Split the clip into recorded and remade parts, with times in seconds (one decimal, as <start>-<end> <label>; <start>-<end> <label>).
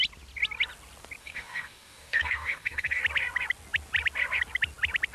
0.0-1.2 recorded; 1.2-3.0 remade; 3.0-5.1 recorded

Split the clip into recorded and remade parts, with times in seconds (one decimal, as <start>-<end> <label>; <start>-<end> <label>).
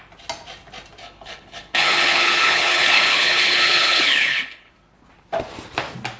0.0-1.0 recorded; 1.0-4.7 remade; 4.7-6.2 recorded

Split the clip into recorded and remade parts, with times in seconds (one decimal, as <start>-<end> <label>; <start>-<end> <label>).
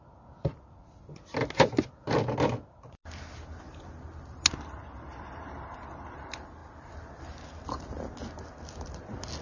0.0-9.4 recorded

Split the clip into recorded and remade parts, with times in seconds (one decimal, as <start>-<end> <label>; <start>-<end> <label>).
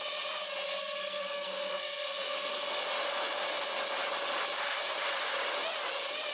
0.0-1.0 recorded; 1.0-2.8 remade; 2.8-6.3 recorded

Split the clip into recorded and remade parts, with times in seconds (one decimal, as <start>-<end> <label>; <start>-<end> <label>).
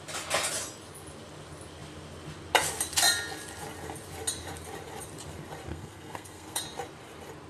0.0-5.7 recorded; 5.7-6.6 remade; 6.6-7.5 recorded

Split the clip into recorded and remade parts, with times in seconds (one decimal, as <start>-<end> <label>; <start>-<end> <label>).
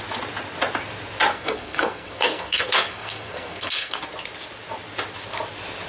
0.0-1.3 recorded; 1.3-4.0 remade; 4.0-5.9 recorded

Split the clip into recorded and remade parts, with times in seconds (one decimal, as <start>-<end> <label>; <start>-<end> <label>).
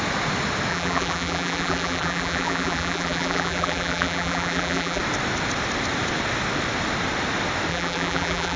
0.0-0.7 recorded; 0.7-5.0 remade; 5.0-7.7 recorded; 7.7-8.6 remade